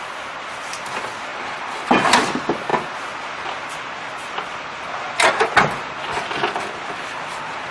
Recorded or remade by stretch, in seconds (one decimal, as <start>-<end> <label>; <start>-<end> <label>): 0.0-7.7 recorded